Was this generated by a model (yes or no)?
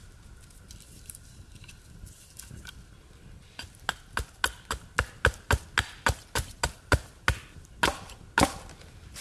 no